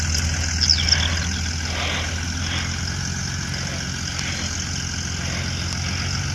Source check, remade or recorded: recorded